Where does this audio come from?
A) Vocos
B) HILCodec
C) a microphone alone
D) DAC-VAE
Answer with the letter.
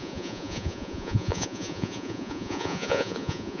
A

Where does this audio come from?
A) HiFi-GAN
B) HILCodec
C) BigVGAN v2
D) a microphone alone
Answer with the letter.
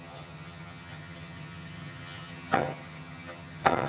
A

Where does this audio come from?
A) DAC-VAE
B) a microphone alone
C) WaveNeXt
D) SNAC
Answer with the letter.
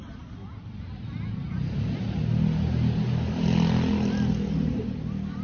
B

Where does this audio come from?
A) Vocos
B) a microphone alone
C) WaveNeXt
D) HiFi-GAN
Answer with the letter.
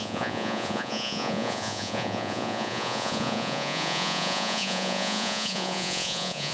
A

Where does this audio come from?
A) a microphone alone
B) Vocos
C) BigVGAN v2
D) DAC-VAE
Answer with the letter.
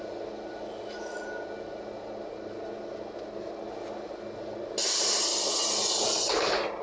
A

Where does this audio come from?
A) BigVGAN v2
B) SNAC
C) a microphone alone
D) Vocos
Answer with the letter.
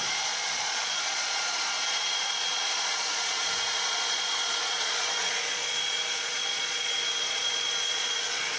D